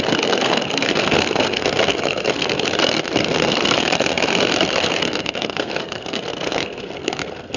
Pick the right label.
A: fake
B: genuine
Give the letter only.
A